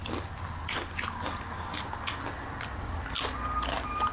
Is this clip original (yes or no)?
yes